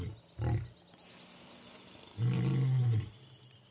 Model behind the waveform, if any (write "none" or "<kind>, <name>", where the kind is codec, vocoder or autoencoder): none